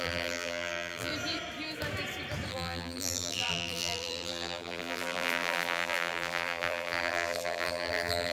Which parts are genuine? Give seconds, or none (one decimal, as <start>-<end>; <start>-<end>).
1.1-2.5